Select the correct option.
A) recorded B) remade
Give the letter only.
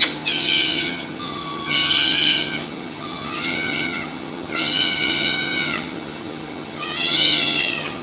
B